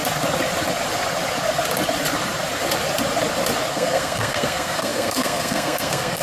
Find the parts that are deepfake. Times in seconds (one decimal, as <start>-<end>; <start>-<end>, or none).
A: 3.7-6.2